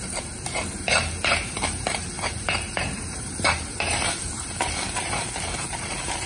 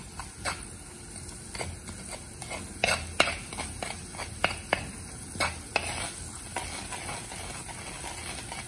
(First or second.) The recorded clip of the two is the second